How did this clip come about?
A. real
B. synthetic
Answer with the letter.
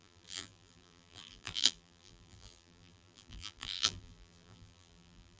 B